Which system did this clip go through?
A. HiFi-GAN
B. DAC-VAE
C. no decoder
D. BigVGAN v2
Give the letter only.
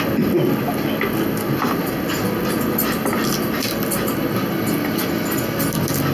C